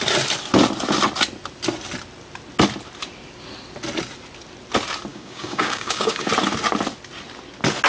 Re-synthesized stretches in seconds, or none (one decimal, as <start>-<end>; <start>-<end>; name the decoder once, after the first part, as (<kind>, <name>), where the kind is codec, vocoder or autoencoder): 5.1-6.3 (codec, DAC)